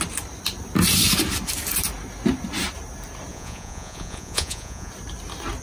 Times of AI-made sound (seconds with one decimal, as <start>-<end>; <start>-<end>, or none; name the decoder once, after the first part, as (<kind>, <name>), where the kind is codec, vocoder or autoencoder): 3.3-4.9 (vocoder, Vocos)